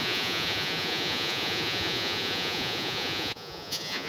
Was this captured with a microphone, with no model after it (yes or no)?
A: no